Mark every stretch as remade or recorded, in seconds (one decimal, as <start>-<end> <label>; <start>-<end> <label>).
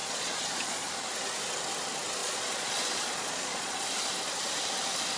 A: 0.0-0.9 remade; 0.9-2.2 recorded; 2.2-3.9 remade; 3.9-5.2 recorded